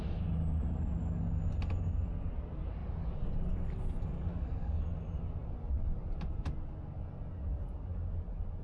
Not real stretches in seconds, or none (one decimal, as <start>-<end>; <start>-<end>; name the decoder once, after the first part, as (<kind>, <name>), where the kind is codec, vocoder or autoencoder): 4.3-4.8 (codec, SNAC)